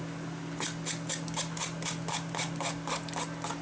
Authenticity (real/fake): real